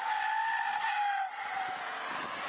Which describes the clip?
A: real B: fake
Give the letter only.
A